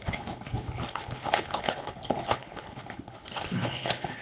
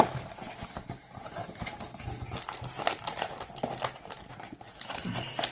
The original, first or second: second